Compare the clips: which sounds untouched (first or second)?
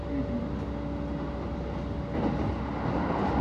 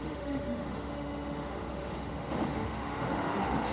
first